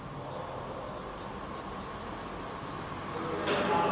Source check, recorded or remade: recorded